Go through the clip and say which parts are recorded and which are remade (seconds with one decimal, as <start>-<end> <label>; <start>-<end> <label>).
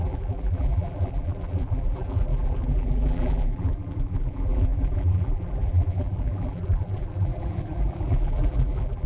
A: 0.0-9.1 remade